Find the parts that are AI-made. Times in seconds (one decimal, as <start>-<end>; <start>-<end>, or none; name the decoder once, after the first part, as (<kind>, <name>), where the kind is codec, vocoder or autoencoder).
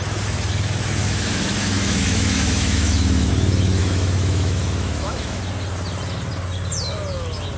1.0-3.3 (autoencoder, DAC-VAE); 3.8-5.4